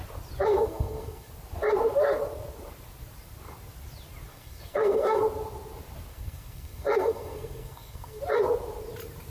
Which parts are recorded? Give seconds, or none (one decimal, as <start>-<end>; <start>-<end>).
0.0-0.5; 1.3-4.3; 5.2-6.1; 8.2-9.3